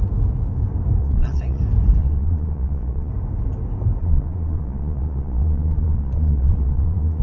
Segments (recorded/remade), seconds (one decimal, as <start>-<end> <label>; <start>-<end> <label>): 0.0-1.0 recorded; 1.0-1.6 remade; 1.6-2.0 recorded; 2.0-3.1 remade; 3.1-4.0 recorded; 4.0-7.2 remade